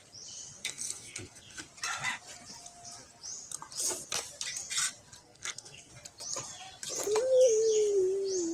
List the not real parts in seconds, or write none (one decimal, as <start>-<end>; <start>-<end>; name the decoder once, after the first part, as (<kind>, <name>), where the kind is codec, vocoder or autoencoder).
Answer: 0.6-1.6 (codec, SNAC); 5.2-5.9